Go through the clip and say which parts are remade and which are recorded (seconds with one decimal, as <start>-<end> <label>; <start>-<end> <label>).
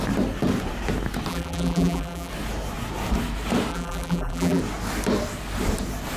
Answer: 0.0-1.3 recorded; 1.3-2.3 remade; 2.3-3.7 recorded; 3.7-4.6 remade; 4.6-6.2 recorded